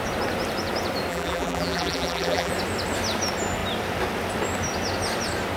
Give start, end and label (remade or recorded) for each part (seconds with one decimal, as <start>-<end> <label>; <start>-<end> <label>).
0.0-1.1 recorded; 1.1-2.5 remade; 2.5-5.6 recorded